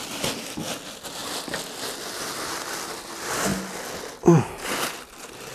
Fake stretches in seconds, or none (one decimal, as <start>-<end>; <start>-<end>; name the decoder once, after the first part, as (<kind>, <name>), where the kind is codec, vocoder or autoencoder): none